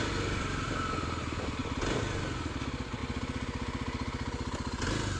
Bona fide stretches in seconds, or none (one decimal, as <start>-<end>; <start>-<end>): 0.0-5.2